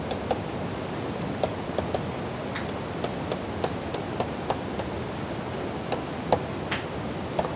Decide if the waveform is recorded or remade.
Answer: recorded